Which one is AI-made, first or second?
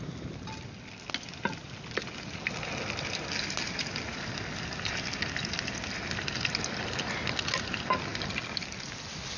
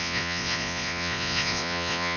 second